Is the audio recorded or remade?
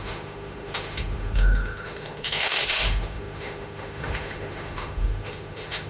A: remade